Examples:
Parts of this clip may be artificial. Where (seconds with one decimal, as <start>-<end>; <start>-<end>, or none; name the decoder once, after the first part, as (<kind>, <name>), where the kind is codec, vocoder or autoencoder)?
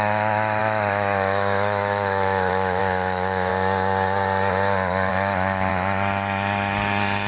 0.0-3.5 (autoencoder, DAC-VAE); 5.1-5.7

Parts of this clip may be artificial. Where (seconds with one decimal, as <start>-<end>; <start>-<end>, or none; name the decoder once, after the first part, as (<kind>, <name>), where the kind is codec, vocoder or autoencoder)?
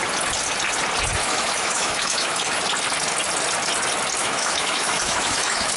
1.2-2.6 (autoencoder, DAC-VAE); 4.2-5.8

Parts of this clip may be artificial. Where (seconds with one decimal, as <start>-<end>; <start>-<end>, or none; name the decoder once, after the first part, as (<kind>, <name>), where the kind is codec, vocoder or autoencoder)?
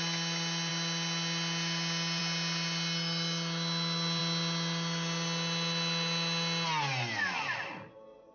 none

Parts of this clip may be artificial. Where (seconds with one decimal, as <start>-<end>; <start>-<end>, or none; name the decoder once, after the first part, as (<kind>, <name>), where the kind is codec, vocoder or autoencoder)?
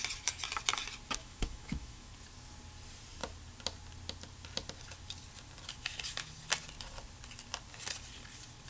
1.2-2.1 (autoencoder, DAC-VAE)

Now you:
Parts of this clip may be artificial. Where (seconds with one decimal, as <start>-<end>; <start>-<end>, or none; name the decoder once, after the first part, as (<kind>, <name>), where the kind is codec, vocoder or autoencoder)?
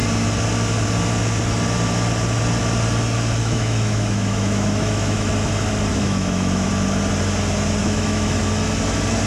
3.4-5.3 (autoencoder, DAC-VAE); 5.9-6.7; 7.8-8.4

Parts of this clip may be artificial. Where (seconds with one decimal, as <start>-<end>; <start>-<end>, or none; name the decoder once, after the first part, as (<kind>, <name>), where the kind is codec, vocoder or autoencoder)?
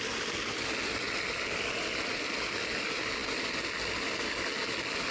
none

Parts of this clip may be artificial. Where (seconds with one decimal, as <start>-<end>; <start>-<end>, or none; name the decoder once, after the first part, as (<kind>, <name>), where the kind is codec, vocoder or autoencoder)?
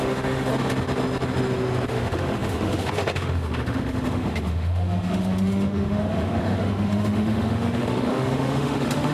0.0-0.5 (autoencoder, DAC-VAE); 1.9-9.1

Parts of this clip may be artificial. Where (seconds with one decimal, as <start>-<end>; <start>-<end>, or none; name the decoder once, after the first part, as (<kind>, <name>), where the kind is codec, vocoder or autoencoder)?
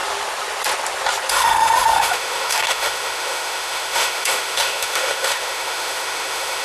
1.3-6.6 (autoencoder, DAC-VAE)